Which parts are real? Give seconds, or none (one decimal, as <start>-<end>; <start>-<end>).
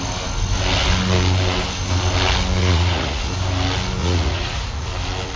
0.0-2.6; 3.3-4.0; 4.9-5.4